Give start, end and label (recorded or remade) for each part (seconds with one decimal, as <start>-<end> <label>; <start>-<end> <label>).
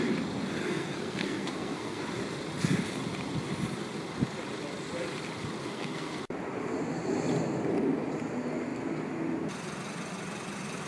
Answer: 0.0-0.6 recorded; 0.6-2.0 remade; 2.0-5.6 recorded; 5.6-6.2 remade; 6.2-10.9 recorded